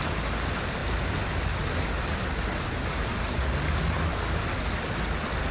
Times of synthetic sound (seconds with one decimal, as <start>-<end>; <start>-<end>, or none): none